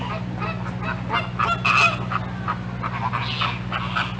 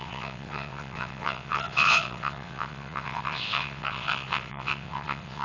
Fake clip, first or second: second